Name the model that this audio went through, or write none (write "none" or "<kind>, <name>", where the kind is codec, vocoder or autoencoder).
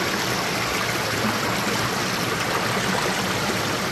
none